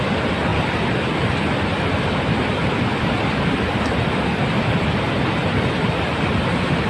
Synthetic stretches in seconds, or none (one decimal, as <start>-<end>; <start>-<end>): none